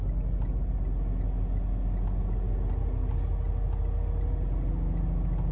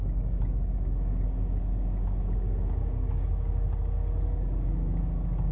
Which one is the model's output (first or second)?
second